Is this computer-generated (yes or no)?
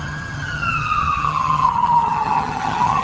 yes